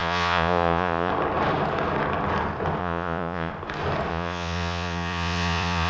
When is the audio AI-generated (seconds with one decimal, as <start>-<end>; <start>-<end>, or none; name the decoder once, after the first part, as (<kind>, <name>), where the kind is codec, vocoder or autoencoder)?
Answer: 0.0-1.1 (vocoder, Vocos); 2.8-3.5; 4.1-5.9